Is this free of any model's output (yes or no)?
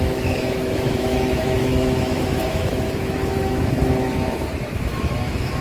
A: no